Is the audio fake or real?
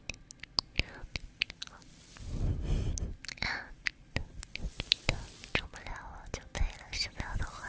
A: real